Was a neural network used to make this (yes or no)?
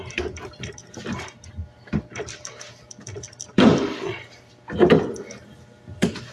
yes